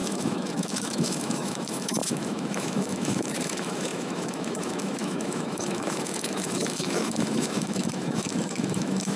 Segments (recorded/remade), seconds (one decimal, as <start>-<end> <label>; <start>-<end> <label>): 0.0-9.2 remade

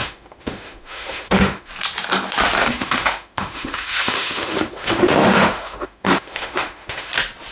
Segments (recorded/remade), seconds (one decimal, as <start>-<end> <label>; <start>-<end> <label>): 0.0-1.7 remade; 1.7-2.6 recorded; 2.6-7.1 remade; 7.1-7.5 recorded

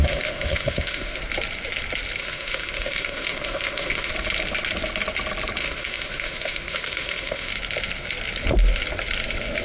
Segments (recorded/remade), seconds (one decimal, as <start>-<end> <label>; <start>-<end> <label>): 0.0-1.2 remade; 1.2-2.2 recorded; 2.2-4.1 remade; 4.1-5.6 recorded; 5.6-7.5 remade; 7.5-9.6 recorded

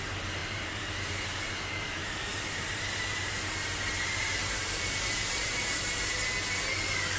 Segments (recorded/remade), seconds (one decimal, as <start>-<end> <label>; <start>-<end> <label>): 0.0-0.4 recorded; 0.4-0.9 remade; 0.9-2.0 recorded; 2.0-6.3 remade; 6.3-7.2 recorded

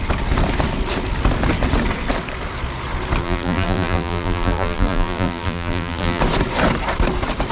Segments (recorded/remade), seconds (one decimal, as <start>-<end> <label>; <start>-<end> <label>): 0.0-3.2 recorded; 3.2-6.2 remade; 6.2-7.5 recorded